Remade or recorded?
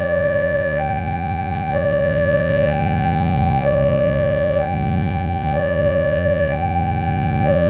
remade